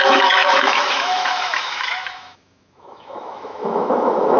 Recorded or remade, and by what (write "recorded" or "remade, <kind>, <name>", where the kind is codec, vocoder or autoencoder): remade, autoencoder, DAC-VAE